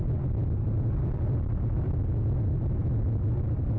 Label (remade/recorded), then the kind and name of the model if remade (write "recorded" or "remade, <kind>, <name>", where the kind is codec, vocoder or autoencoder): recorded